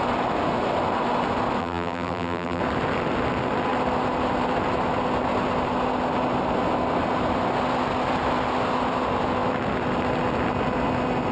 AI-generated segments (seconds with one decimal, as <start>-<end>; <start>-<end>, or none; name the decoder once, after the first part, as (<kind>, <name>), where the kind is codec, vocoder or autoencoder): 1.6-2.6 (vocoder, BigVGAN v2)